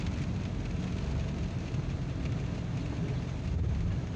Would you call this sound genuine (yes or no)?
yes